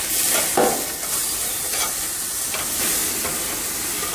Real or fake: real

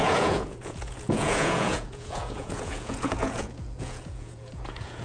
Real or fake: fake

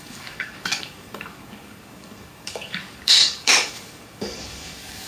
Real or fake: fake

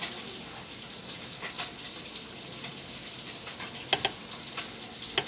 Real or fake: real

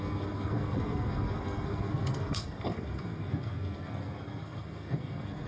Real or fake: fake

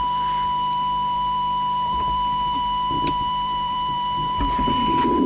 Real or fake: fake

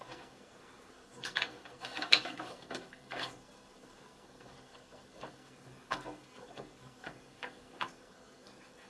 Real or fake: fake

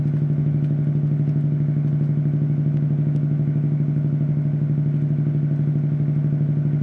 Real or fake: real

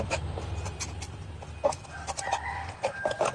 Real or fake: real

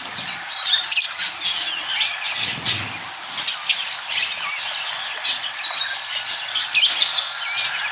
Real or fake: real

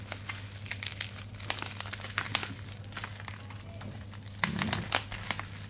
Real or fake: real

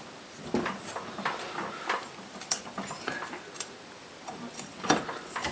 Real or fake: fake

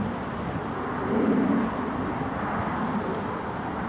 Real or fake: real